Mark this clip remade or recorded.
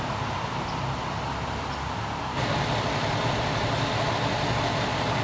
recorded